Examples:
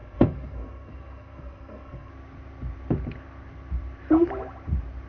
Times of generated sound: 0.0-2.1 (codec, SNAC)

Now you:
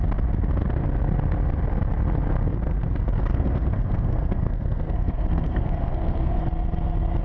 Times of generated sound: 2.5-6.4 (codec, SNAC)